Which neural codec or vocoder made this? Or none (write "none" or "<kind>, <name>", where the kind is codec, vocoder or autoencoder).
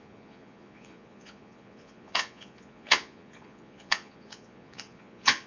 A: vocoder, Vocos